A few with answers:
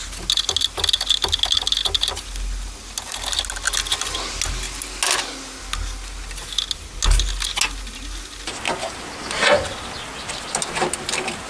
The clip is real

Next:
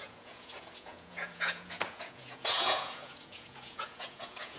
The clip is fake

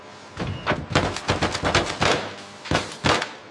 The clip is real